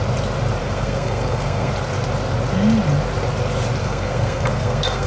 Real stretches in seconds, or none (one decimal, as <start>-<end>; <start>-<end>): 0.0-0.6; 1.7-3.8